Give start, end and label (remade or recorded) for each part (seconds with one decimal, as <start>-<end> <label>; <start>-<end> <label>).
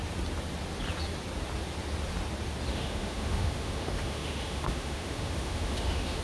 0.0-2.7 recorded; 2.7-6.2 remade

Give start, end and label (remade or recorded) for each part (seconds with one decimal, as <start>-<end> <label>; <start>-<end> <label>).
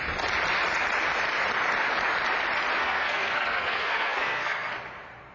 0.0-2.8 recorded; 2.8-4.7 remade; 4.7-5.3 recorded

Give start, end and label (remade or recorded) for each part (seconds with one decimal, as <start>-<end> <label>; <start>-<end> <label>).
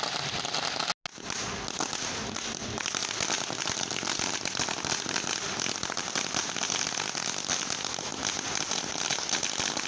0.0-9.9 recorded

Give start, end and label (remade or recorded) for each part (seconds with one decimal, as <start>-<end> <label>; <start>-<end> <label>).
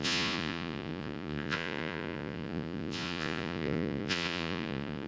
0.0-5.1 remade